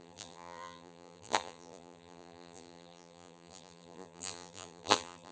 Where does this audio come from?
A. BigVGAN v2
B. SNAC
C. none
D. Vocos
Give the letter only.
A